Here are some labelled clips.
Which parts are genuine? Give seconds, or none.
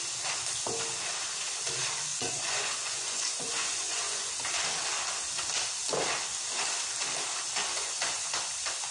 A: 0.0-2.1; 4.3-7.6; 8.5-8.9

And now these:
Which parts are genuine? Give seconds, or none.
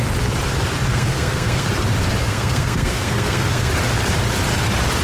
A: 0.0-0.9; 1.7-2.2; 3.7-5.0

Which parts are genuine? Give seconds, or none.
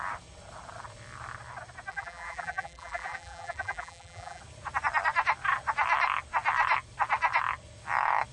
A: 0.0-1.9; 4.4-8.3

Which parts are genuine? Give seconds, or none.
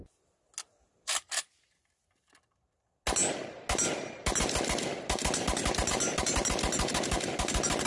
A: 0.0-7.9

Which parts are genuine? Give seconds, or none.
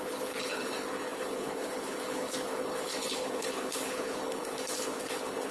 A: none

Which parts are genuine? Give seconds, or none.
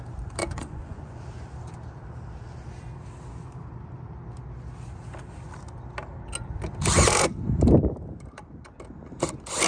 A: 0.0-0.4; 1.2-9.7